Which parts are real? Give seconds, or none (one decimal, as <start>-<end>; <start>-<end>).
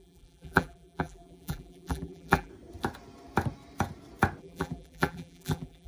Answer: 2.5-4.4